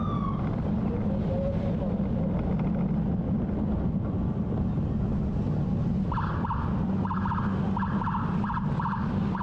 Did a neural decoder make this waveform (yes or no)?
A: no